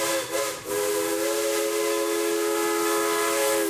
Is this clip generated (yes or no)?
no